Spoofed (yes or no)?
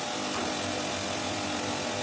no